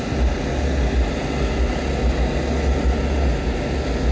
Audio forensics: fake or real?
real